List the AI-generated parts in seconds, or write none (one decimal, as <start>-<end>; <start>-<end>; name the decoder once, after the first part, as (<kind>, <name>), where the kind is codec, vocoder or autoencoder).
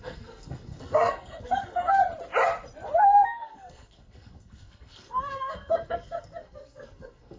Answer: 0.0-2.0 (codec, SNAC); 3.0-7.4